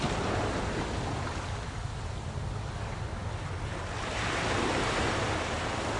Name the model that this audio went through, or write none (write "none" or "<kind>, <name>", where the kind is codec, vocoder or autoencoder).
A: none